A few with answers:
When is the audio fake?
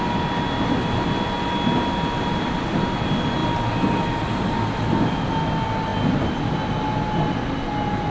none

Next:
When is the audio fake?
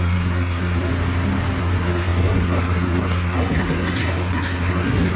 0.0-0.9; 1.6-5.2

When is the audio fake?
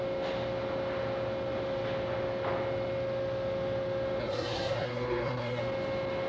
4.2-5.6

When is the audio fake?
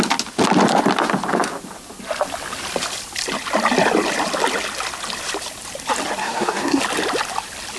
6.2-6.8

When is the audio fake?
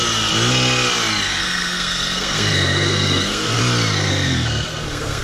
1.3-3.6; 4.1-5.2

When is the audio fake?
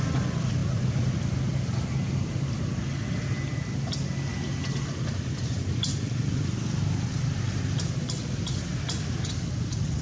none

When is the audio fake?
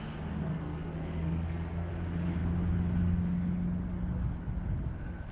0.5-1.9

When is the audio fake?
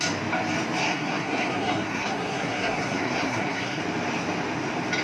0.8-3.8